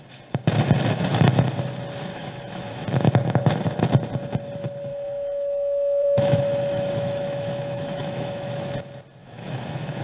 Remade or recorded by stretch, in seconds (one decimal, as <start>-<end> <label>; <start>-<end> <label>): 0.0-2.1 recorded; 2.1-2.8 remade; 2.8-4.9 recorded; 4.9-8.5 remade; 8.5-9.2 recorded; 9.2-10.0 remade